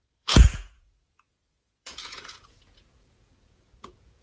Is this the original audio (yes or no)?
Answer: no